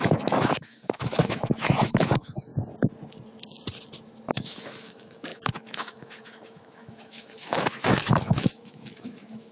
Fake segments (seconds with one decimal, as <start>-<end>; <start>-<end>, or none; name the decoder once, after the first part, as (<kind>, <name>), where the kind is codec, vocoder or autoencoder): 0.0-2.5 (autoencoder, DAC-VAE); 4.3-9.5